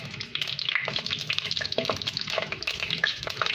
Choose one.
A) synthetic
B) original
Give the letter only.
A